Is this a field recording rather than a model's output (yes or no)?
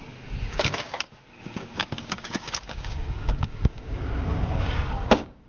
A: no